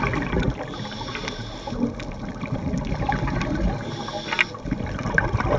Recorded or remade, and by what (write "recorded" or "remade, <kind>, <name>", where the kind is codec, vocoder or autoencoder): recorded